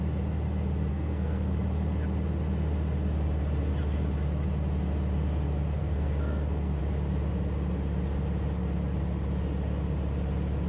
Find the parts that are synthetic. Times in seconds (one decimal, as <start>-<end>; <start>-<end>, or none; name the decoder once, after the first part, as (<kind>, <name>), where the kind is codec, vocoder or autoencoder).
0.9-1.5 (codec, SNAC); 5.8-6.8